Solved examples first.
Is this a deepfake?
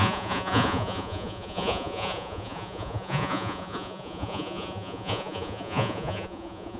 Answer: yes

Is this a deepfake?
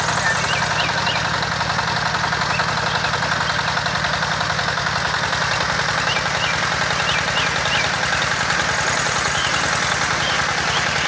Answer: no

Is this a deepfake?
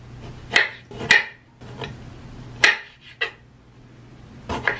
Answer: no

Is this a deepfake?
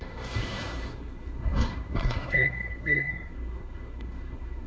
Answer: yes